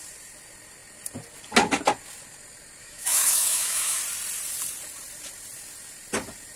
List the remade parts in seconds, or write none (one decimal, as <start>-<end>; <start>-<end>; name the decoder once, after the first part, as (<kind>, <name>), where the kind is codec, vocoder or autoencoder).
2.8-4.0 (autoencoder, DAC-VAE)